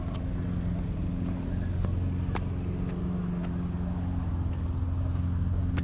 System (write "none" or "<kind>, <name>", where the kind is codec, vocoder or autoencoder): none